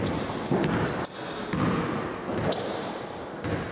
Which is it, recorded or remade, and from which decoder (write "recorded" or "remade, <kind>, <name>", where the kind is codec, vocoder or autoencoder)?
recorded